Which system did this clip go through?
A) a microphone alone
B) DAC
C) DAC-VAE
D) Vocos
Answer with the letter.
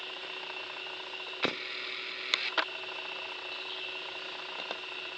A